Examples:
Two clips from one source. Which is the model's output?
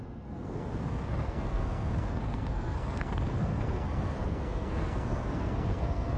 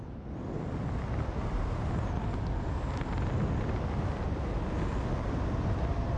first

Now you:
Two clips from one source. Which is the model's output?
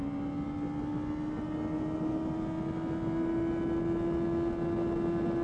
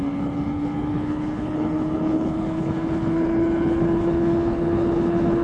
second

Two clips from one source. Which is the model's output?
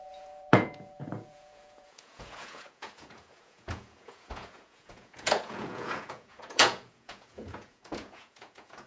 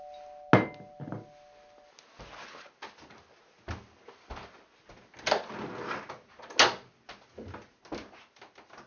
first